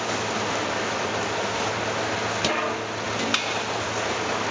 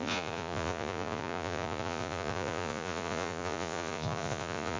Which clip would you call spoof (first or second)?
second